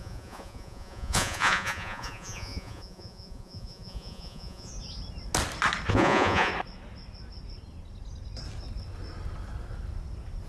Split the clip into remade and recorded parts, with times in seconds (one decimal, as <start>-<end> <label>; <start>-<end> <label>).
0.0-4.7 remade; 4.7-5.9 recorded; 5.9-6.5 remade; 6.5-10.5 recorded